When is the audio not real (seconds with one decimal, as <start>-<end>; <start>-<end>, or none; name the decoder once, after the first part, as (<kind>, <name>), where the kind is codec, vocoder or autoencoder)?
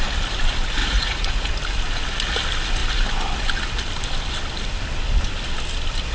0.8-1.5 (vocoder, Vocos)